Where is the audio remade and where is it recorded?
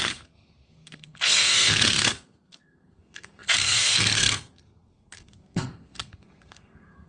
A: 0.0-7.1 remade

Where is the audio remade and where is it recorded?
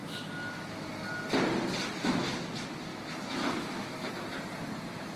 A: 0.0-0.9 remade; 0.9-2.9 recorded; 2.9-4.1 remade; 4.1-5.2 recorded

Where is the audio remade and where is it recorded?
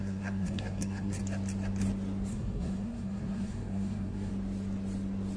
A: 0.0-1.2 remade; 1.2-2.3 recorded; 2.3-4.3 remade; 4.3-5.4 recorded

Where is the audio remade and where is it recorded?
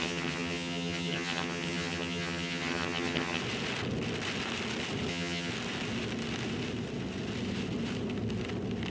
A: 0.0-3.4 remade; 3.4-5.1 recorded; 5.1-5.5 remade; 5.5-8.9 recorded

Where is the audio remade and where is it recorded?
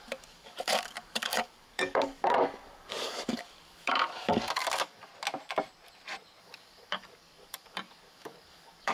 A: 0.0-5.1 remade; 5.1-6.4 recorded; 6.4-8.9 remade